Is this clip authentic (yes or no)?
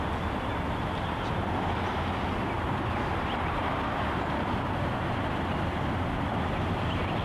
yes